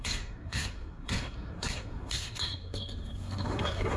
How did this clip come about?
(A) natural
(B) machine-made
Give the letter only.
B